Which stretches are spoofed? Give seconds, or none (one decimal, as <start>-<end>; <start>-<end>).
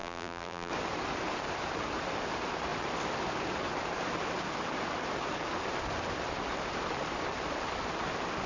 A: 0.0-0.7